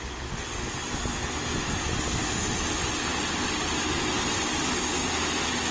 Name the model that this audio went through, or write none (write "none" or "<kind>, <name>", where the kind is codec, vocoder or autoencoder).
none